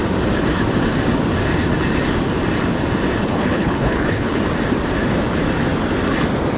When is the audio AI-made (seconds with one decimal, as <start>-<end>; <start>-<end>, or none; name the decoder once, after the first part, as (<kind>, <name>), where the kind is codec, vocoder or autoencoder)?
3.2-4.4 (codec, HILCodec)